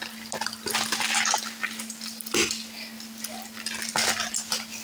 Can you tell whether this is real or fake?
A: real